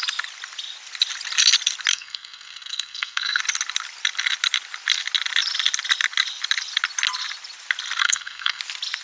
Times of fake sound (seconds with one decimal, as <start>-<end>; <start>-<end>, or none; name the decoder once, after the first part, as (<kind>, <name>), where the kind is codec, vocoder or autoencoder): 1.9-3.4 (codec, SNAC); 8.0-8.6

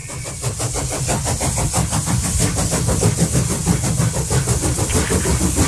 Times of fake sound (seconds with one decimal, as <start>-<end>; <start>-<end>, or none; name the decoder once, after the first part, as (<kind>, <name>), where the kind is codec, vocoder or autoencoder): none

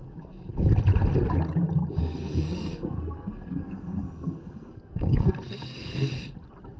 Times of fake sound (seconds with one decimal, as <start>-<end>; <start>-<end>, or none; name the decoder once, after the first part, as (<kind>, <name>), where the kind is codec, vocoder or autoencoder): 2.0-6.1 (codec, SNAC)